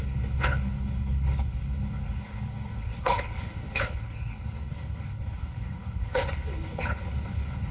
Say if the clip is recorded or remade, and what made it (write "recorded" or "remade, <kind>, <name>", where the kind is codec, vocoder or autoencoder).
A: remade, codec, HILCodec